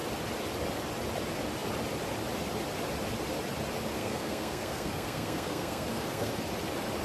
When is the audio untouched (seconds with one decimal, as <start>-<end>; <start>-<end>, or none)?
0.0-4.0; 6.3-7.0

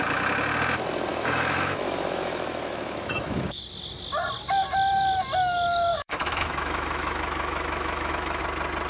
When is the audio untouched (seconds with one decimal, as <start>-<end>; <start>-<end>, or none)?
0.0-1.1; 3.6-5.9; 8.4-8.9

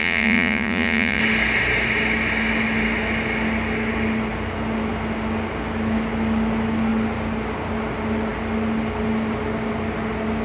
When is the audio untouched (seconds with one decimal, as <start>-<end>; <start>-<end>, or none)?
1.2-10.4

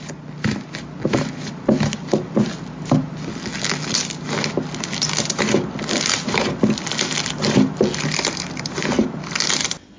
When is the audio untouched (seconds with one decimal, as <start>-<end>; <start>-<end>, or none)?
0.0-8.1; 9.0-10.0

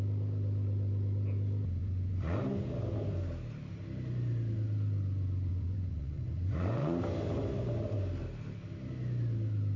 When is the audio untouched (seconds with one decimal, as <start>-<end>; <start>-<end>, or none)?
0.0-1.8; 2.4-5.5; 7.0-9.8

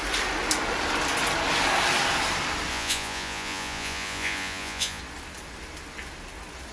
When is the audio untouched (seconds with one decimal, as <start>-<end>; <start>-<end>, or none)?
0.0-2.7; 5.0-6.7

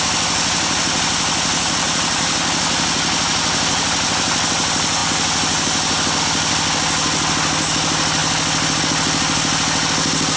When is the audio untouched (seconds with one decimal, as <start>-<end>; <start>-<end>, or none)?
0.0-10.4

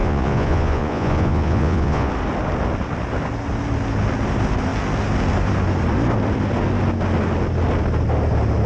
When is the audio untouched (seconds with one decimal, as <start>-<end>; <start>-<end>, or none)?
2.1-8.7